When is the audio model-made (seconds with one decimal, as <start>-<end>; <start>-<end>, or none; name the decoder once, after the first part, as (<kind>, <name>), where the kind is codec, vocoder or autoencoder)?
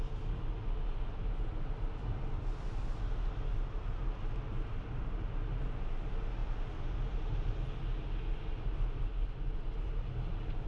none